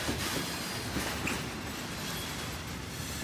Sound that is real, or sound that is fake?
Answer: real